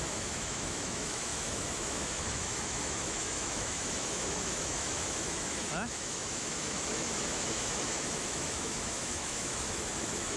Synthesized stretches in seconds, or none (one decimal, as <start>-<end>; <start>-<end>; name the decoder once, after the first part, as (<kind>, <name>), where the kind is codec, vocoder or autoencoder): 0.0-10.4 (autoencoder, DAC-VAE)